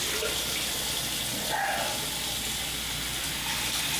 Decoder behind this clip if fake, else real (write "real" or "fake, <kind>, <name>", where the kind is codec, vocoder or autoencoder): real